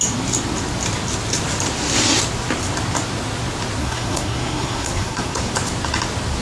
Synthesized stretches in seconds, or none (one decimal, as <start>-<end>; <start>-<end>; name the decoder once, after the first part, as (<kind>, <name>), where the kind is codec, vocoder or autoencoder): 3.8-5.5 (codec, SNAC)